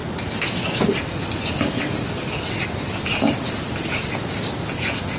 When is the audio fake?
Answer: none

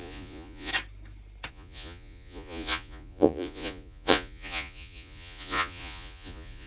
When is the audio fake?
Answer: 0.0-0.7 (vocoder, Vocos); 1.5-6.7

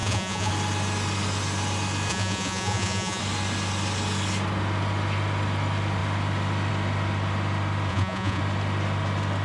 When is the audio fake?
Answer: 0.0-0.5 (vocoder, Vocos); 2.1-3.2; 7.9-8.4

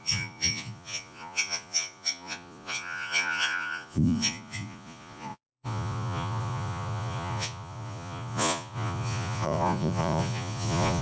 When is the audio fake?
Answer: 0.0-11.0 (vocoder, Vocos)

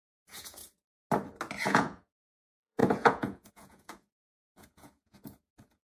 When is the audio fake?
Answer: 0.0-0.6 (vocoder, Vocos); 1.6-6.0

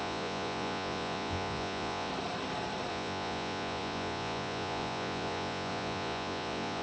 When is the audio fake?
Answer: 0.0-2.1 (vocoder, Vocos); 2.9-6.8

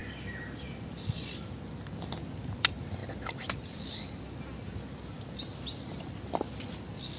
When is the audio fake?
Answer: none

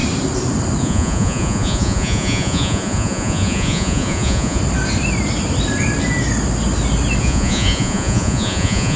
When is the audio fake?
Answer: 0.8-4.6 (vocoder, Vocos); 7.2-9.0